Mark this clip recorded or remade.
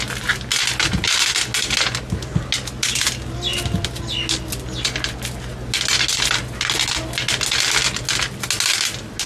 recorded